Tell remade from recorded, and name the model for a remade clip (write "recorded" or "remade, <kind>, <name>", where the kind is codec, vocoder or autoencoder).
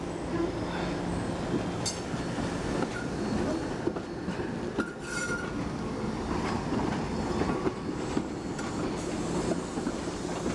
recorded